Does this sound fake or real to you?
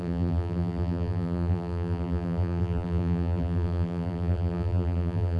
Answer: fake